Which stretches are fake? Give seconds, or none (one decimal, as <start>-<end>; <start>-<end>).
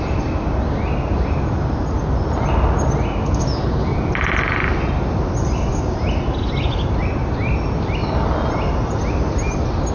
none